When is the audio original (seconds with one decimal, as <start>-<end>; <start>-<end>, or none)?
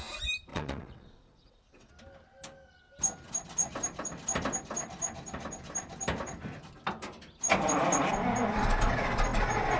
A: 0.0-0.5; 1.9-9.8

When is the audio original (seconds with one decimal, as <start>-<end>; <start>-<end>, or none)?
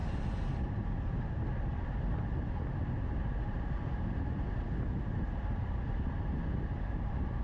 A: 0.0-7.4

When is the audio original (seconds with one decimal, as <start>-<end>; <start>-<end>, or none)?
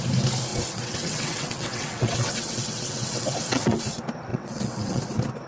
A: 0.0-0.5; 3.8-4.3; 5.0-5.5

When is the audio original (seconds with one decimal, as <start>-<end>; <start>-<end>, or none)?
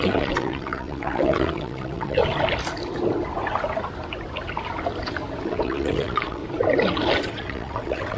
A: 2.2-5.4; 6.4-7.3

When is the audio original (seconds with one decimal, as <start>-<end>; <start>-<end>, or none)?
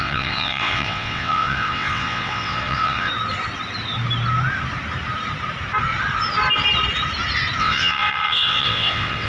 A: 3.1-7.6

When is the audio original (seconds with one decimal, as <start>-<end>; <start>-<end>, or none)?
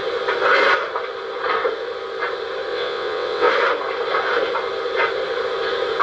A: 0.0-2.7; 3.5-6.0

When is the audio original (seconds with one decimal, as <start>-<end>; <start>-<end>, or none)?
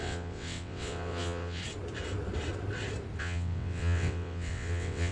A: 1.6-3.2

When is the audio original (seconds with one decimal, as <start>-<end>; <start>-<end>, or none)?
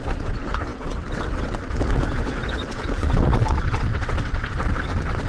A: none